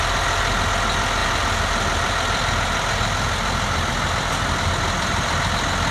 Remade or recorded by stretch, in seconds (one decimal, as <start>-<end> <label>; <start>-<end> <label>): 0.0-5.9 recorded

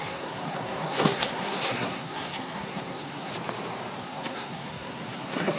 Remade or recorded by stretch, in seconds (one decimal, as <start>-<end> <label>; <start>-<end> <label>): 0.0-3.3 remade; 3.3-4.0 recorded; 4.0-5.6 remade

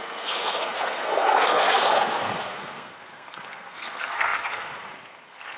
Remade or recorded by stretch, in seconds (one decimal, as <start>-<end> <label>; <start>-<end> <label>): 0.0-5.6 remade

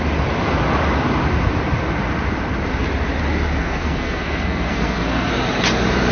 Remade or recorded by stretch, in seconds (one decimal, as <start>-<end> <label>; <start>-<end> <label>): 0.0-3.6 recorded; 3.6-5.3 remade; 5.3-6.1 recorded

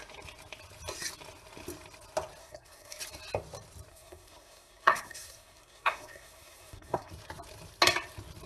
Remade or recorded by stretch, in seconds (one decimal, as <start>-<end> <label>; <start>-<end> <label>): 0.0-2.4 recorded; 2.4-3.0 remade; 3.0-3.9 recorded; 3.9-7.1 remade; 7.1-8.5 recorded